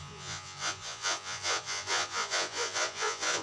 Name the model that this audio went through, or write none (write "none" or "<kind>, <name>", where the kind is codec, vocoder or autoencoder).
vocoder, Vocos